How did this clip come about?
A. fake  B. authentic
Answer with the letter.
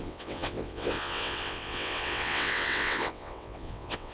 A